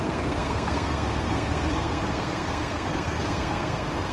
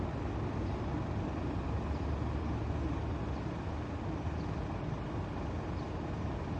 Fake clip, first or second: first